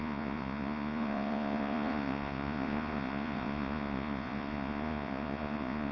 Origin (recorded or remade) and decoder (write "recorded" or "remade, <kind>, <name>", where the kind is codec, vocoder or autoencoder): remade, vocoder, Vocos